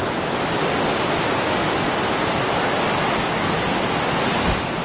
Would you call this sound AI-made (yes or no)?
no